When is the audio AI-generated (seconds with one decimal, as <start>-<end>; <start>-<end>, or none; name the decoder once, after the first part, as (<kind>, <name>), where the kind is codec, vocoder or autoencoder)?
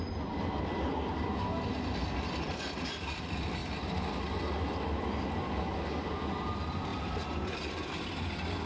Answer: none